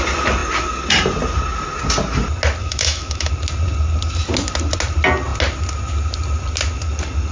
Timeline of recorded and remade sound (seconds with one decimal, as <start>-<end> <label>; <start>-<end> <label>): 0.0-2.6 recorded; 2.6-3.3 remade; 3.3-7.3 recorded